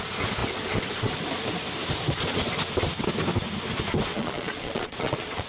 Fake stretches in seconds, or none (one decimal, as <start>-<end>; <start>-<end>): 4.1-5.5